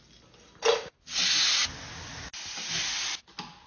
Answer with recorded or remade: recorded